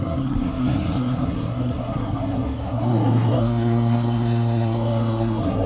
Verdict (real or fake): fake